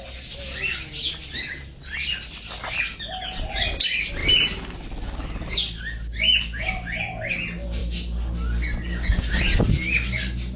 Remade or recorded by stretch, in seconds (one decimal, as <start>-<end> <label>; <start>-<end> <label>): 0.0-10.6 recorded